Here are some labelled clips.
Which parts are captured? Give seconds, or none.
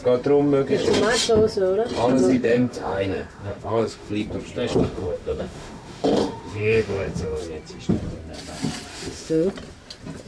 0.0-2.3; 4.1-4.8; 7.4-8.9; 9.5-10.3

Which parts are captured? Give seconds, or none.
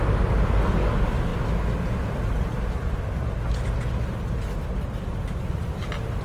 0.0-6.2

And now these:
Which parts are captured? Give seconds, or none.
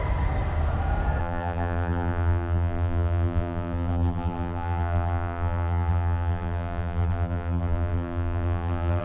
0.0-1.2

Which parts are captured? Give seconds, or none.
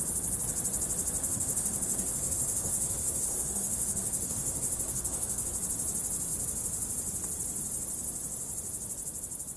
0.0-1.2; 5.5-9.6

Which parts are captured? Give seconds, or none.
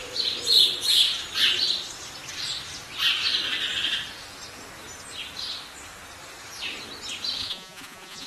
0.0-7.4